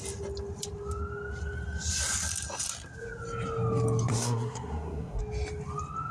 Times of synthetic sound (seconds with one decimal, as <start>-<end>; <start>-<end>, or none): 4.1-5.2